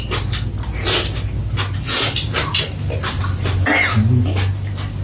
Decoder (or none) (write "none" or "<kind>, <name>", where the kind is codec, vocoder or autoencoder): none